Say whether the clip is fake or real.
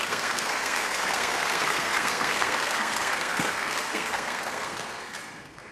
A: fake